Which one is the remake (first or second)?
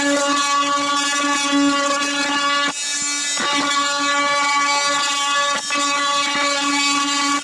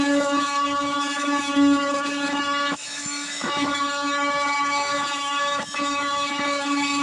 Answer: second